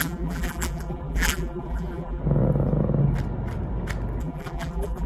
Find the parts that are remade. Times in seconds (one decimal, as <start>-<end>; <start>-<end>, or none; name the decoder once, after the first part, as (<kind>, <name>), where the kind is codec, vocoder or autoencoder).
0.0-2.2 (vocoder, BigVGAN v2); 4.2-5.1